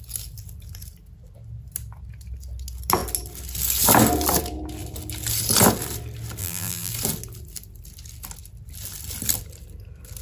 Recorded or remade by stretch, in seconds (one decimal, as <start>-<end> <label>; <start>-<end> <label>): 0.0-6.4 recorded; 6.4-6.9 remade; 6.9-10.2 recorded